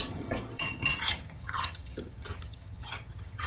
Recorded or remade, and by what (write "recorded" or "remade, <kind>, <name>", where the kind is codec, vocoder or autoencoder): remade, vocoder, HiFi-GAN